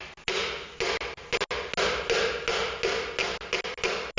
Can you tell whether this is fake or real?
real